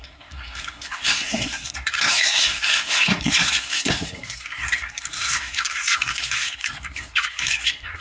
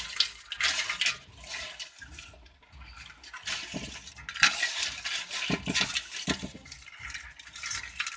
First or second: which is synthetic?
first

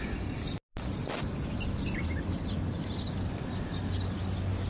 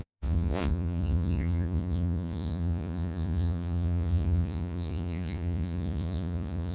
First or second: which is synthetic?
second